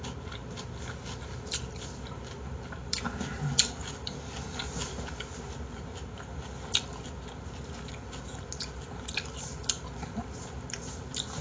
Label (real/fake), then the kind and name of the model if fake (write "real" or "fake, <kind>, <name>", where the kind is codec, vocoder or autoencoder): real